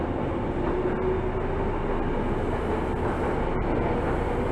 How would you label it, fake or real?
real